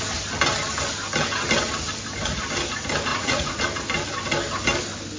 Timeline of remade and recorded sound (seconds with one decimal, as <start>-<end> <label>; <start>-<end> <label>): 0.0-3.1 recorded; 3.1-3.6 remade; 3.6-5.2 recorded